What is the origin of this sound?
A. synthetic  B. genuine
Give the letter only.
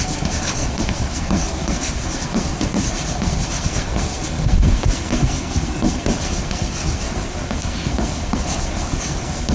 A